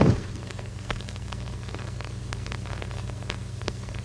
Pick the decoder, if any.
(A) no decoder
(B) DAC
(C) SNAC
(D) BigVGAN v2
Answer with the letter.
C